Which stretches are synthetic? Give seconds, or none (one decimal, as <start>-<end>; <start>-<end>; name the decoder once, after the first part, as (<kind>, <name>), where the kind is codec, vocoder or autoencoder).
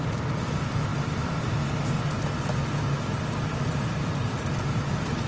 none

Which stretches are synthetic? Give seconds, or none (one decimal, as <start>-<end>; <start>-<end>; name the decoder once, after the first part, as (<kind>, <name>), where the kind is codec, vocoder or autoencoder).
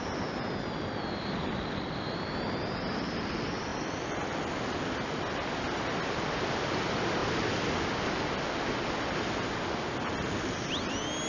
none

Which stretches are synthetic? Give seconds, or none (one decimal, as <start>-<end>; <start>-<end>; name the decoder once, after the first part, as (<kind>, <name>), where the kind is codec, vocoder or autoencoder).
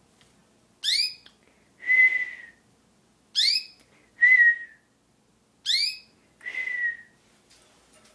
none